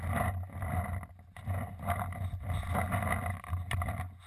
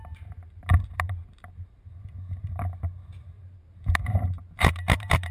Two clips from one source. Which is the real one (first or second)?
first